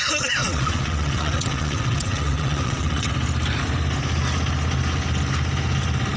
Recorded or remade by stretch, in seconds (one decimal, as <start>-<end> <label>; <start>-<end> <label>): 0.0-0.4 recorded; 0.4-3.1 remade; 3.1-6.2 recorded